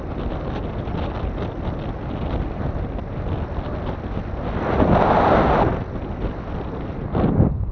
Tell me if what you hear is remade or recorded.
recorded